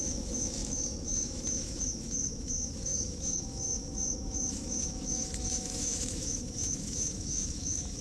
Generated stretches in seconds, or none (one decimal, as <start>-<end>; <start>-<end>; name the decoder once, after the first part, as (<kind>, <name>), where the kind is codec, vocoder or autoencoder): 0.0-8.0 (autoencoder, DAC-VAE)